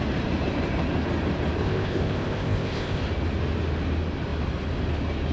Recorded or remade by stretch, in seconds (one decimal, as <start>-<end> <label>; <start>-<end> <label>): 0.0-1.6 recorded; 1.6-3.0 remade; 3.0-5.3 recorded